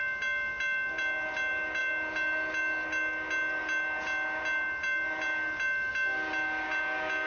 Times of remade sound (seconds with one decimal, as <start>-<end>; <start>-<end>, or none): none